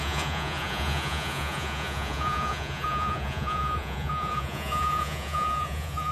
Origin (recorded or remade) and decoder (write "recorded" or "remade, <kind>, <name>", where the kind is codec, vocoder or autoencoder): remade, vocoder, Vocos